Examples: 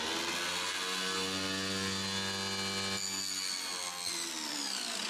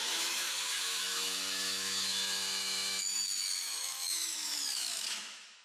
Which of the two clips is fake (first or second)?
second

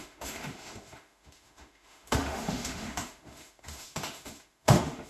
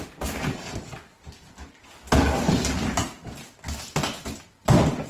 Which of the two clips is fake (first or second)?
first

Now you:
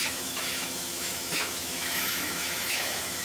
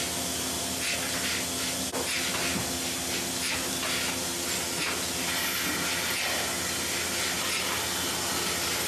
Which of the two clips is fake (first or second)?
first